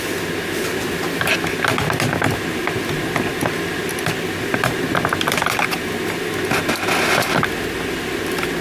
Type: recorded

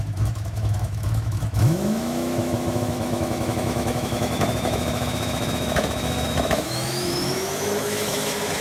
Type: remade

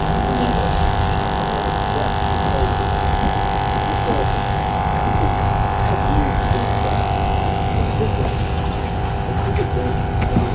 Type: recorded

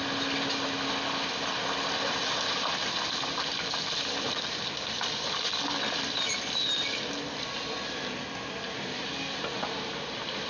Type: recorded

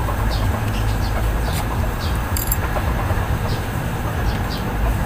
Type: remade